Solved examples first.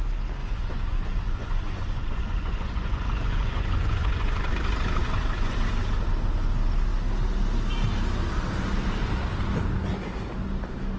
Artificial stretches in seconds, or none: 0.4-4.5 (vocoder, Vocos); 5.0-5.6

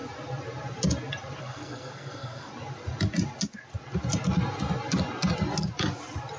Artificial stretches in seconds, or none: 1.4-2.5 (codec, SNAC)

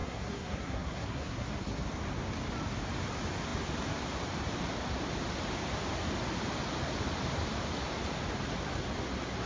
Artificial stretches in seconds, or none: 0.0-1.8 (codec, SNAC)

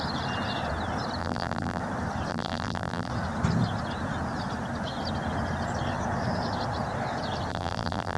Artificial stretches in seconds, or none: 1.2-1.8 (vocoder, BigVGAN v2); 2.3-3.1; 7.5-8.2

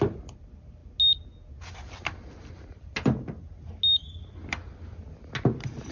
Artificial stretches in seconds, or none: none